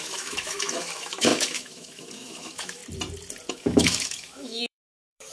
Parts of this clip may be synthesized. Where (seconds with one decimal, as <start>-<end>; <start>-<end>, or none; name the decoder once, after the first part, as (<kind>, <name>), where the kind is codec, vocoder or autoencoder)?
0.0-2.8 (autoencoder, DAC-VAE); 3.5-5.3